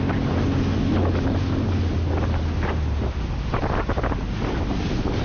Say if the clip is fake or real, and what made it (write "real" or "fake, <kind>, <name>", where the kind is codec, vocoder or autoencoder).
real